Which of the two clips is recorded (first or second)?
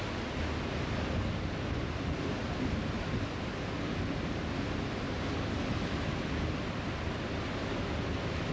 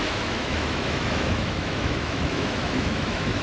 first